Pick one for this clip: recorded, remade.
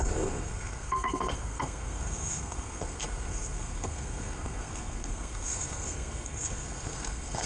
remade